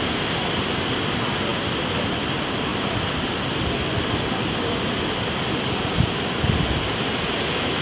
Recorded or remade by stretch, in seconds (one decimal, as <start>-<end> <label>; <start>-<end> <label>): 0.0-7.8 recorded